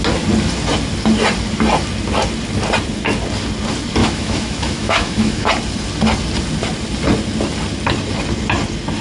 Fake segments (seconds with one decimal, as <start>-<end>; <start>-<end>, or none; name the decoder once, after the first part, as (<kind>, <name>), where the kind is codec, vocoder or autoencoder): 4.0-5.5 (autoencoder, DAC-VAE)

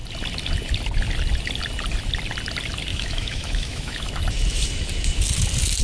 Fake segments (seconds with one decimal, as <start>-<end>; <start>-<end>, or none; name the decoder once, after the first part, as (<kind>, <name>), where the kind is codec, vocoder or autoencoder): 2.9-4.1 (autoencoder, DAC-VAE)

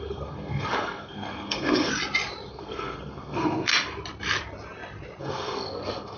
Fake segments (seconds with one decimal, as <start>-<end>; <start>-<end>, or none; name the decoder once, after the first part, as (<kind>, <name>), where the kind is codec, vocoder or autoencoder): 0.0-1.9 (codec, SNAC); 2.5-3.7; 5.2-6.2

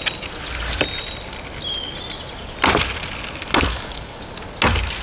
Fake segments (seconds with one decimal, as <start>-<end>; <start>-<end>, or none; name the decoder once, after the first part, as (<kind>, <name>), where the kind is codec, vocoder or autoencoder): 3.7-4.2 (codec, DAC)

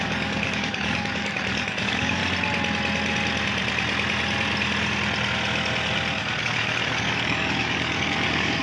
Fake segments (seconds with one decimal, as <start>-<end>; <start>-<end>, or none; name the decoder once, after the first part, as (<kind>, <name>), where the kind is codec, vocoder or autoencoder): 0.0-2.2 (codec, DAC); 6.4-8.6

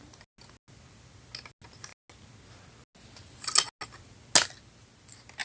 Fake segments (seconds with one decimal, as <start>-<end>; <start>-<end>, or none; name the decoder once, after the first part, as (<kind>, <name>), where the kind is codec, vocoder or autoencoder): none

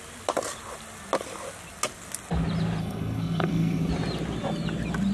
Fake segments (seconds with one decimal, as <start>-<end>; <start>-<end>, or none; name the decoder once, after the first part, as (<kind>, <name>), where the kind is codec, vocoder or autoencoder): 2.8-3.9 (codec, SNAC)

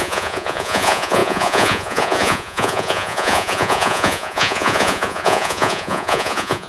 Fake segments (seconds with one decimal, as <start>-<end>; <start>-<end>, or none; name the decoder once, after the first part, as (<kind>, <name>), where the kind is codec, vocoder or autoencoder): 0.0-6.7 (vocoder, Vocos)